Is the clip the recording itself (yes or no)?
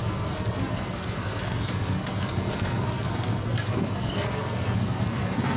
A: no